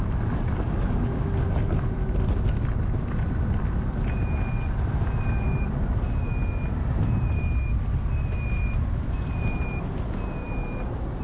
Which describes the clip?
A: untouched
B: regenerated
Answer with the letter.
A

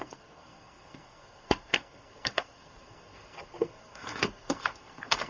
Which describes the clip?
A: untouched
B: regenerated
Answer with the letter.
B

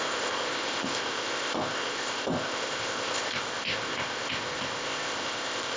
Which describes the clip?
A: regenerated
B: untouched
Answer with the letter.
A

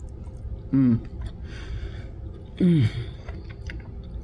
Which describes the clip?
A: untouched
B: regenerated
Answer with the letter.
A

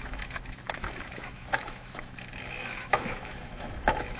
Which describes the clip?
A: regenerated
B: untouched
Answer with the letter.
A